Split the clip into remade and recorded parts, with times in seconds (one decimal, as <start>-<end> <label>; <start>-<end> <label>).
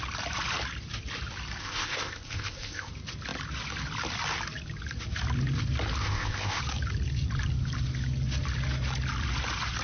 0.0-1.6 recorded; 1.6-2.9 remade; 2.9-6.0 recorded; 6.0-6.6 remade; 6.6-9.8 recorded